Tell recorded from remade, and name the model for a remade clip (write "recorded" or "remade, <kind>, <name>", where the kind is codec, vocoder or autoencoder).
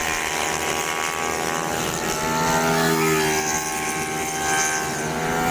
recorded